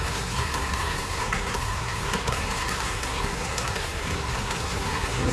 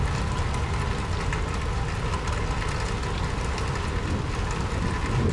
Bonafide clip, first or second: second